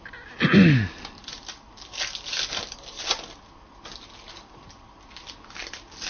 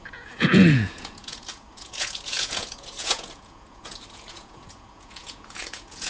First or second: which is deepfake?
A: second